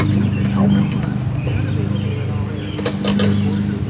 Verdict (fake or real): real